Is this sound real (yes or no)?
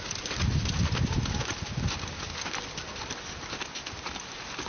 yes